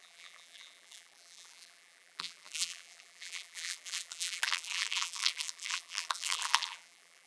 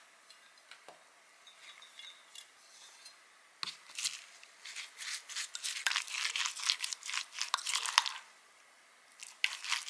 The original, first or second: second